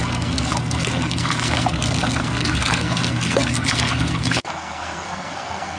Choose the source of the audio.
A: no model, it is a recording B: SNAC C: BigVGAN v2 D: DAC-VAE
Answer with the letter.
B